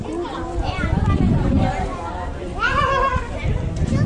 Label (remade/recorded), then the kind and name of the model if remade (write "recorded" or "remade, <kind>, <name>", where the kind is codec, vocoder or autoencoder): recorded